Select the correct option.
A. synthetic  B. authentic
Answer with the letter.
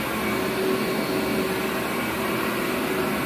B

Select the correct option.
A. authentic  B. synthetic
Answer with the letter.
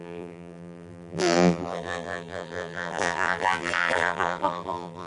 B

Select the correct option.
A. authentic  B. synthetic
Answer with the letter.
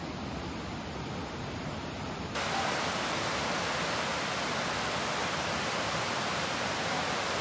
A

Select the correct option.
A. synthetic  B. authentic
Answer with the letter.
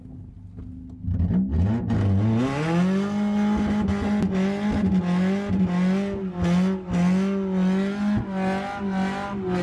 B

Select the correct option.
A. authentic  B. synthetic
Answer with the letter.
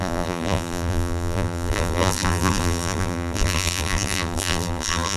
B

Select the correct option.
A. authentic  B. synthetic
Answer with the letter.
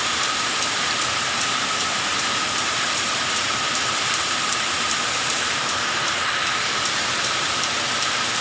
B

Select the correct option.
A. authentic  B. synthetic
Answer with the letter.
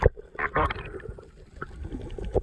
A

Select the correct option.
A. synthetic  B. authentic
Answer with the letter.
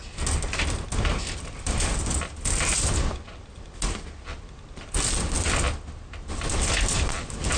B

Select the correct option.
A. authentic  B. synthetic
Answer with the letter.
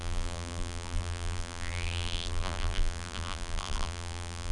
B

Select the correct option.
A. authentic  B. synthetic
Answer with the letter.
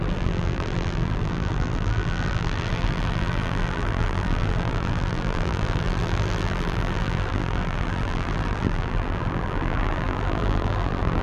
B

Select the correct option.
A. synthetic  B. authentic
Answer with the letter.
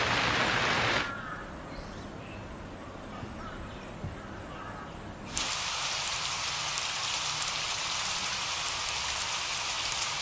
B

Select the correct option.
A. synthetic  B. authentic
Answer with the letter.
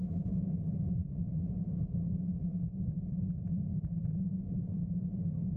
A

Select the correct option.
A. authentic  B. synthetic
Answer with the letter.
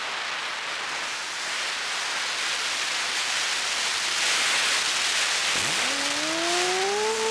A